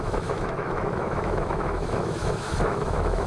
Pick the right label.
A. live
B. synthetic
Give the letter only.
B